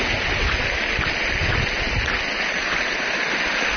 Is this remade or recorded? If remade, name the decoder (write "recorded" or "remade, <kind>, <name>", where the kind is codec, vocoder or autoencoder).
recorded